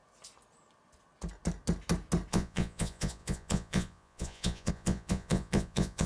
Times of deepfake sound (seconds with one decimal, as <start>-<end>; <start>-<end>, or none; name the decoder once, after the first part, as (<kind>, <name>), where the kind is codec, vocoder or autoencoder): 2.3-6.1 (vocoder, Vocos)